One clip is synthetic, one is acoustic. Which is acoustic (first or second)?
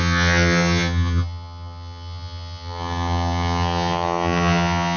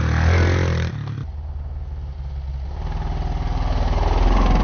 second